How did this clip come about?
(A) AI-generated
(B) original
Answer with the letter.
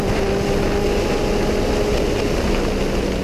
B